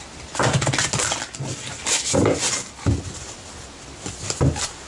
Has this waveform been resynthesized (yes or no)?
no